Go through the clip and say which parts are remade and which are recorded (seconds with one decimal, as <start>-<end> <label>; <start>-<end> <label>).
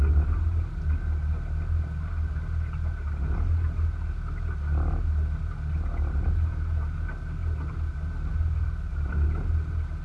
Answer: 0.0-10.0 recorded